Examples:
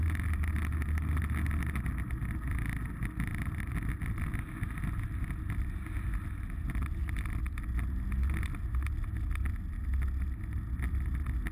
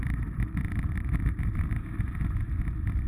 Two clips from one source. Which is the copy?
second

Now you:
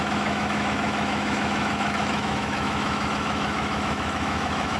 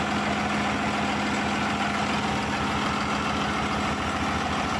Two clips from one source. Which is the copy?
first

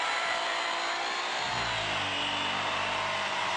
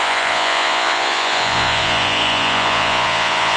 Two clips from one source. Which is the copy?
second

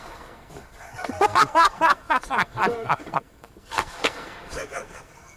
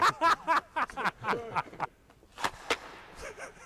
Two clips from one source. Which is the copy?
first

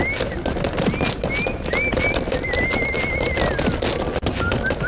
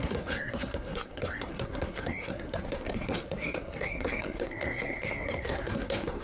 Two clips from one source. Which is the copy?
second